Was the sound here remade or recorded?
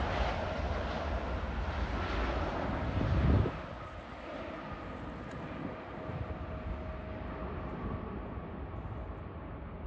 recorded